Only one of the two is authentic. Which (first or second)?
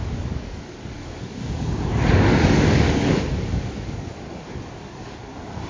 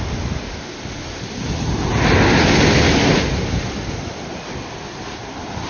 second